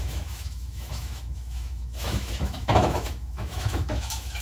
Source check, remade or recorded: remade